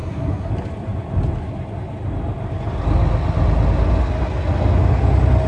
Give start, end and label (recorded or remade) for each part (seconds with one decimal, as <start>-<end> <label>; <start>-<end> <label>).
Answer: 0.0-0.5 remade; 0.5-5.5 recorded